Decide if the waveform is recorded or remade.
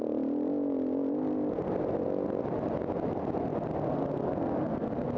recorded